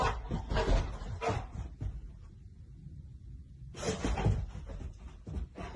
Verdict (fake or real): real